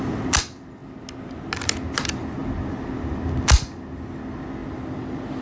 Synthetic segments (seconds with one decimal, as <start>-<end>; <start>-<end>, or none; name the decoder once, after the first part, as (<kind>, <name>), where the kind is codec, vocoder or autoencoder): none